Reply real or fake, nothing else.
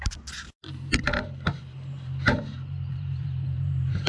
fake